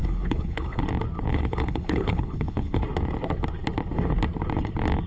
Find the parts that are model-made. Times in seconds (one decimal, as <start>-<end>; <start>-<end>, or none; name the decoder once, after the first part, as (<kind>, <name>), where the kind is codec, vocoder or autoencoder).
0.0-0.8 (codec, HILCodec); 1.3-2.8